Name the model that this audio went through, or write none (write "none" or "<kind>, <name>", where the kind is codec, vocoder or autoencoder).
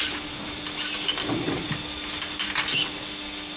none